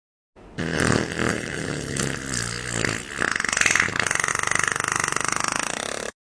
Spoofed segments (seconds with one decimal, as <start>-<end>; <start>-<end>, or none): 1.3-2.0